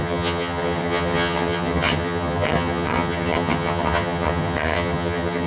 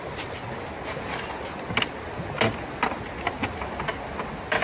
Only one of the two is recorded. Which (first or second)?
second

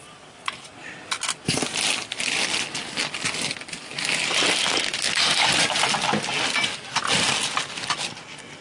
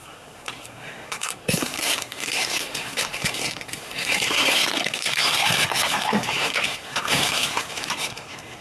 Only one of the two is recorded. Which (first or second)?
first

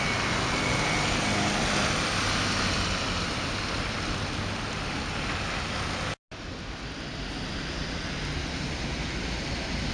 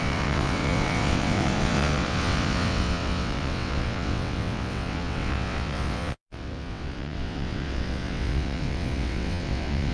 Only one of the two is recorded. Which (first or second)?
first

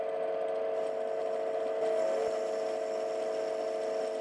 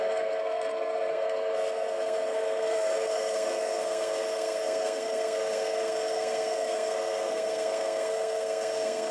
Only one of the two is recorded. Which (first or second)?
first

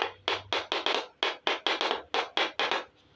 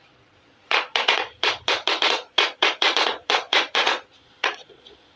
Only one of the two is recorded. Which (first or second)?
first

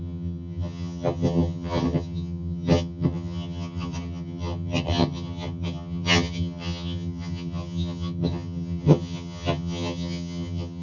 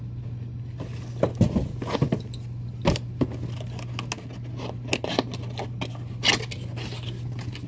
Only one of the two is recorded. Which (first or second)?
second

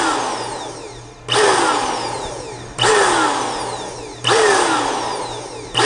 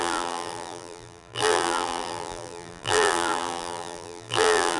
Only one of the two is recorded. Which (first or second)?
first